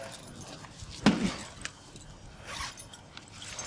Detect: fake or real real